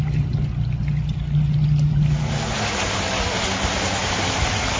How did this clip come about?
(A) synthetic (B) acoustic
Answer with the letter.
B